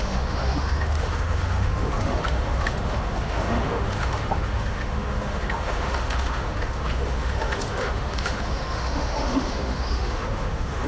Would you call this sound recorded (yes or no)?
no